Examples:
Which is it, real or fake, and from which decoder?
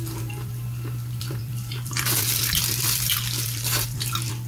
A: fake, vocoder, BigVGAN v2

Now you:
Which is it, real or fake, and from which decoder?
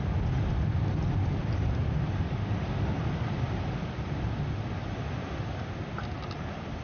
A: real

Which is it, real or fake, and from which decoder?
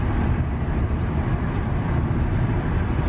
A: real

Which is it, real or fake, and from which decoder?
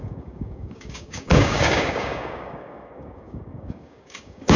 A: fake, codec, DAC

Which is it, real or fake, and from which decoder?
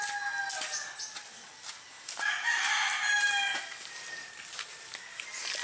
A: real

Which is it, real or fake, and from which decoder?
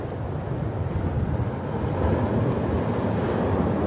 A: real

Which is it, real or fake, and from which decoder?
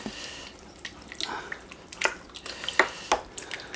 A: real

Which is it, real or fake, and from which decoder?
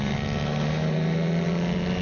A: real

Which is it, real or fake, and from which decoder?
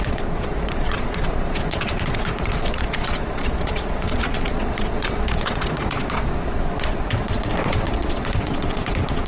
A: fake, vocoder, Vocos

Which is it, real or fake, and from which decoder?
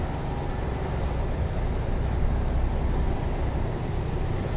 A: real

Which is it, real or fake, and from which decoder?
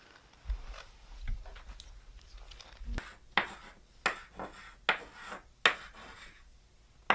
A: real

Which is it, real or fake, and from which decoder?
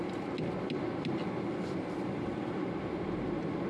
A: real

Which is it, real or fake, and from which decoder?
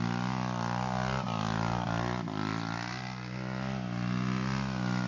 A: real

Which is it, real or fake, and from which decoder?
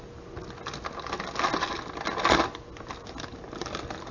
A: real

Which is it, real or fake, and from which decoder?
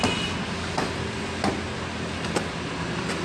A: real